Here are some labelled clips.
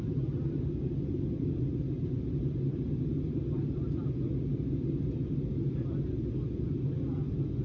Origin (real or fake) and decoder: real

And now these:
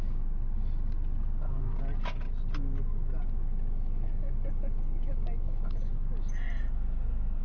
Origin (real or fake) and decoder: real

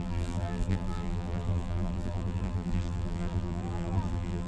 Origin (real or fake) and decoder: fake, vocoder, BigVGAN v2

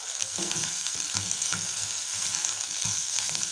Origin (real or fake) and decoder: fake, codec, SNAC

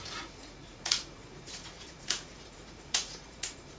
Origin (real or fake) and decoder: fake, vocoder, Vocos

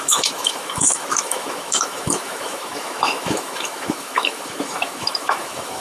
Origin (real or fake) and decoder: fake, autoencoder, DAC-VAE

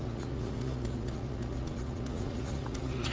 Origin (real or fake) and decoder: fake, vocoder, Vocos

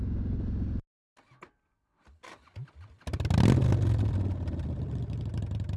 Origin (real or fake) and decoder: real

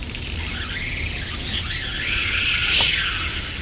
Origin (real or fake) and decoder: real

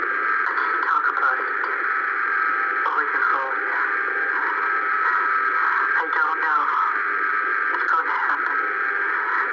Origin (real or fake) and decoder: real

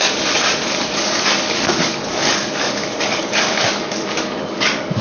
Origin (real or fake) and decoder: fake, codec, DAC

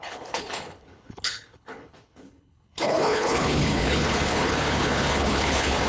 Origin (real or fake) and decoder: fake, codec, HILCodec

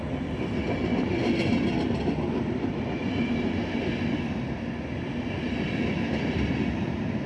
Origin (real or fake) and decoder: real